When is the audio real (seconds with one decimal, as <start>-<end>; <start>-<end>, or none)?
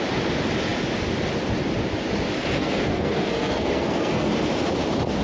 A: 0.0-2.6; 4.3-5.2